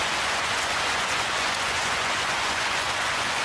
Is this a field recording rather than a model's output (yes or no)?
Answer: no